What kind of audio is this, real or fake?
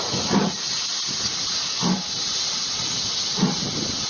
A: real